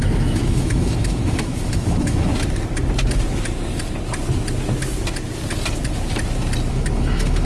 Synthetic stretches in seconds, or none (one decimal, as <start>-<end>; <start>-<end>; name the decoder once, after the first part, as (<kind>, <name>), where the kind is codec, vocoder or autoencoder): 0.0-2.3 (autoencoder, DAC-VAE); 6.7-7.4